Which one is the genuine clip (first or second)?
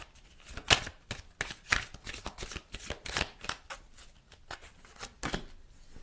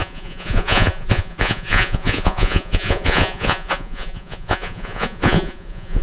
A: first